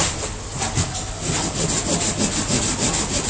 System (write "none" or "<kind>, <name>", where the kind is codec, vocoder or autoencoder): none